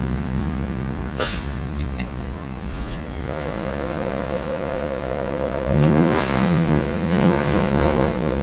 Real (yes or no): no